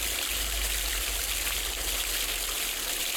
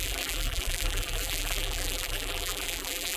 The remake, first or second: second